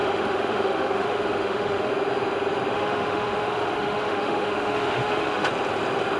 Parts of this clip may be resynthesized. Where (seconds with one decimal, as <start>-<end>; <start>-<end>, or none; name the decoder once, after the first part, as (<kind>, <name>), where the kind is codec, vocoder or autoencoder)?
0.0-1.9 (autoencoder, DAC-VAE); 2.7-5.5